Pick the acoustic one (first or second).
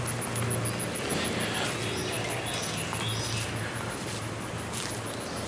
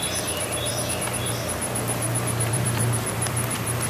first